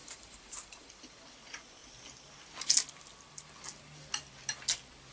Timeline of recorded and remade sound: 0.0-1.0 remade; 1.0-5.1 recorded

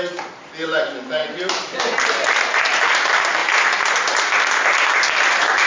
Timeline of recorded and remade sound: 0.0-1.2 recorded; 1.2-1.8 remade; 1.8-5.7 recorded